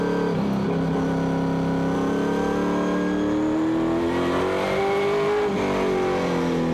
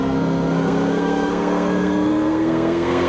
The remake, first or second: second